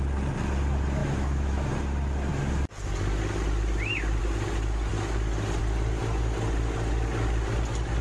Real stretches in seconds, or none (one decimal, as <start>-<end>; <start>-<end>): 0.0-1.0; 1.7-8.0

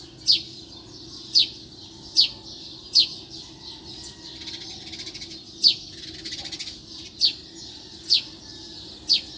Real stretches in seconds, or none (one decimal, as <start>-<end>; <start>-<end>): 0.0-9.4